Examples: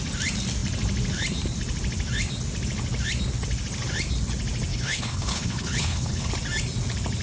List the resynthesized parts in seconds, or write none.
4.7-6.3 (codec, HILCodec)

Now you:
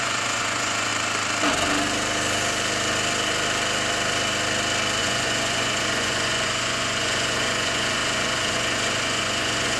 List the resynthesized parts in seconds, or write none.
0.0-0.9 (vocoder, Vocos); 5.0-9.8

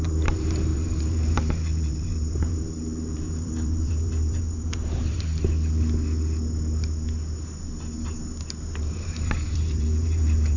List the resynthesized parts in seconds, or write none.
0.0-5.3 (vocoder, BigVGAN v2); 8.7-10.6